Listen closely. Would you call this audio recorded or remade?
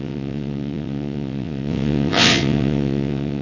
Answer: remade